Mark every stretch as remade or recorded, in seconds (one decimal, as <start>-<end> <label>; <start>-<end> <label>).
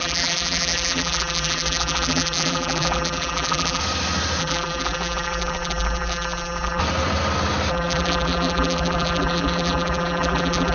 0.0-3.8 remade; 3.8-4.4 recorded; 4.4-6.8 remade; 6.8-7.7 recorded; 7.7-10.7 remade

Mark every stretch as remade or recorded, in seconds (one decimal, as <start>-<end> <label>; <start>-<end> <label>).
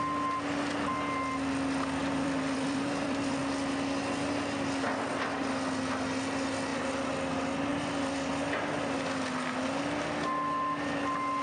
0.0-2.0 recorded; 2.0-3.4 remade; 3.4-7.7 recorded; 7.7-8.4 remade; 8.4-11.4 recorded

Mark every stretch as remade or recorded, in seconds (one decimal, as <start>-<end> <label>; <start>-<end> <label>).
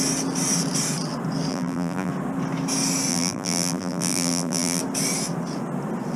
0.0-1.5 recorded; 1.5-2.1 remade; 2.1-3.1 recorded; 3.1-4.8 remade; 4.8-6.2 recorded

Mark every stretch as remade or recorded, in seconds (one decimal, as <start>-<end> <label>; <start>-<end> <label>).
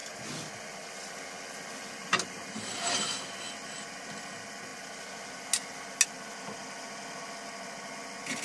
0.0-2.0 recorded; 2.0-2.7 remade; 2.7-8.4 recorded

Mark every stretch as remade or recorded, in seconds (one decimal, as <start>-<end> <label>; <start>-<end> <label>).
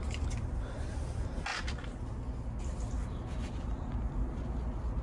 0.0-5.0 recorded